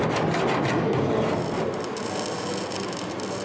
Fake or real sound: real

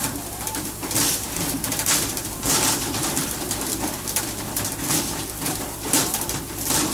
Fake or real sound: fake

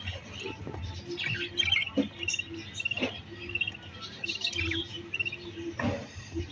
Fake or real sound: real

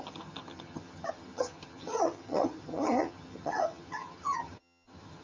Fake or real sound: fake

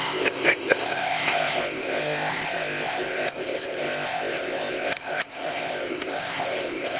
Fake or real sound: fake